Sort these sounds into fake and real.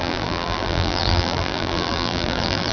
fake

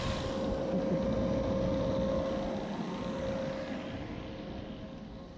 real